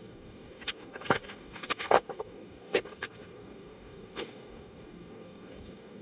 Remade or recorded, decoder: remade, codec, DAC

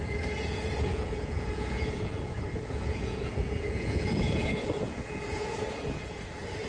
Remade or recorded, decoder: remade, vocoder, Vocos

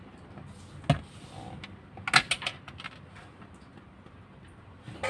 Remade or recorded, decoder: recorded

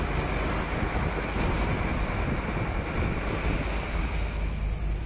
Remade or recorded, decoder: recorded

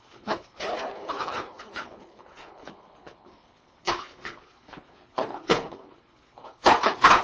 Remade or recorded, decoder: remade, codec, HILCodec